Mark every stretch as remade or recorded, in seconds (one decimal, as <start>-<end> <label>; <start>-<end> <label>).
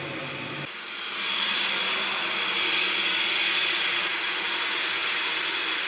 0.0-3.6 recorded; 3.6-4.3 remade; 4.3-5.9 recorded